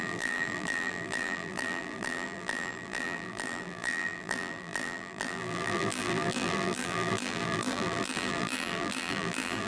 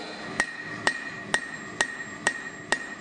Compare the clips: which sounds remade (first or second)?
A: first